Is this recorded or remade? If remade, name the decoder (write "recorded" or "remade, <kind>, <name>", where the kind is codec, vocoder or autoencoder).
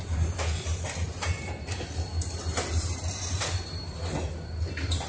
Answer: recorded